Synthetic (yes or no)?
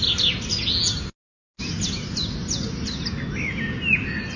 no